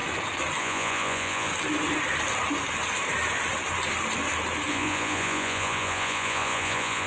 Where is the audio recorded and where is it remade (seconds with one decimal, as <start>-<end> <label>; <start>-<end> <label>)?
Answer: 0.0-0.6 recorded; 0.6-1.5 remade; 1.5-4.7 recorded; 4.7-7.1 remade